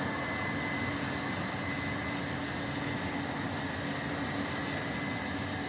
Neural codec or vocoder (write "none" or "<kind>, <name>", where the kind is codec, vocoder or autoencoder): none